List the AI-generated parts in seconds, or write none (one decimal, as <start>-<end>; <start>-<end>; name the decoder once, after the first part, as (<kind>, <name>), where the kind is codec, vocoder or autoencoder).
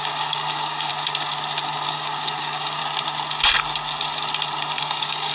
0.0-0.9 (codec, DAC); 1.9-2.8; 4.8-5.3